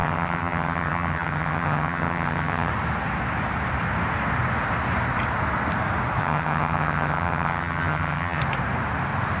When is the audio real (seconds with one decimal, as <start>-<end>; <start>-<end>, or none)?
2.7-6.2; 8.4-9.4